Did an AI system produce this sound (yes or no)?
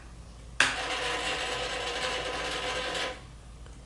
no